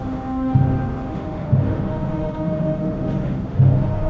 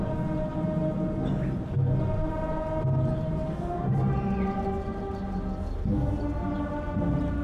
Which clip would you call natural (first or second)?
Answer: second